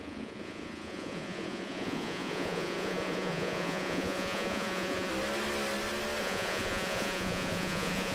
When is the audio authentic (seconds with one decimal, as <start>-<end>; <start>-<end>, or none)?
5.1-6.2